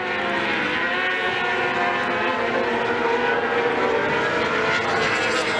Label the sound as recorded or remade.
recorded